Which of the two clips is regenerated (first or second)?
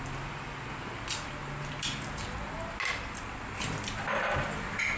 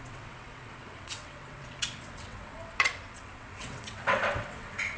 second